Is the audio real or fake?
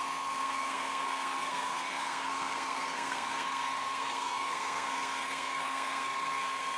fake